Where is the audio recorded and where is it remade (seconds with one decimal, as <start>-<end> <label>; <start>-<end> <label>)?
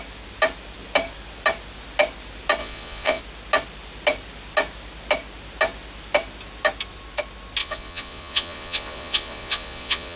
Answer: 0.0-2.6 recorded; 2.6-3.2 remade; 3.2-7.6 recorded; 7.6-10.2 remade